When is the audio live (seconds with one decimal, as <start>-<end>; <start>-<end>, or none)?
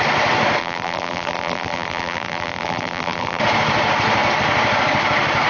0.0-0.6; 3.4-5.5